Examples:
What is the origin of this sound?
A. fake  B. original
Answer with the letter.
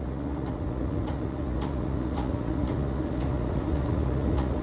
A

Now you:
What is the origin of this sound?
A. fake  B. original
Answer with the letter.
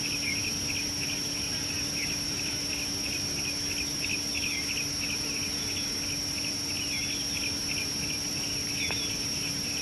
B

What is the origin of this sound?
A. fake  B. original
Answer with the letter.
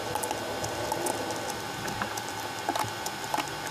B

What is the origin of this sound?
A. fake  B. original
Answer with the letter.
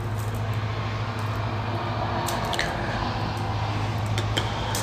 B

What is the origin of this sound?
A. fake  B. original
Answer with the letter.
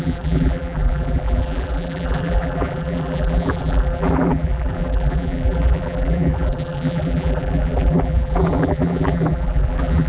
A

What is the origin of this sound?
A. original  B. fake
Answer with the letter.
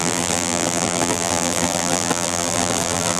B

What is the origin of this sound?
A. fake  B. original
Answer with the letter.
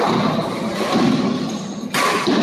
B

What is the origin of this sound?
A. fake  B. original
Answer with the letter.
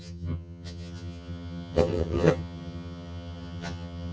A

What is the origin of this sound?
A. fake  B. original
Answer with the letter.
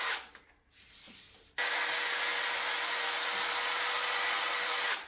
B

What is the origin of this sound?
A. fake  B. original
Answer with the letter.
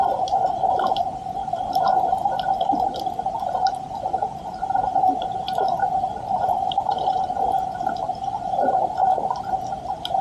B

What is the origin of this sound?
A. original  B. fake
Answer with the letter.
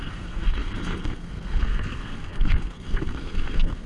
B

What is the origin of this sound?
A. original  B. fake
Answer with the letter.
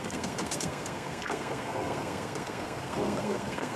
B